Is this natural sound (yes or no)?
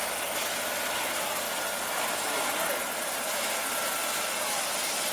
yes